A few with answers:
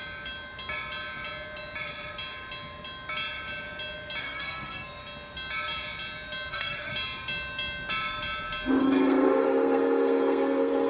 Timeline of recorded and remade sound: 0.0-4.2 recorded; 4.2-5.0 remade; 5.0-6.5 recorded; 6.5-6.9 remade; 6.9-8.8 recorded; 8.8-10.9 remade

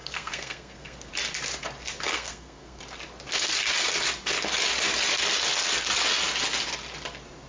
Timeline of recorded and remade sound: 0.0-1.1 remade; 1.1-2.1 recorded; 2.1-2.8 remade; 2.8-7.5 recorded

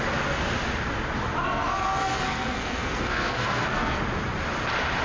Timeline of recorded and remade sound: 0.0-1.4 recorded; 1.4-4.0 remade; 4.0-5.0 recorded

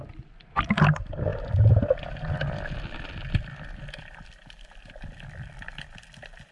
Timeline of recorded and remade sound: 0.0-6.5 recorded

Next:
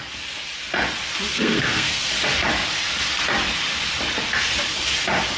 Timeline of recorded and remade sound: 0.0-1.3 recorded; 1.3-2.1 remade; 2.1-5.4 recorded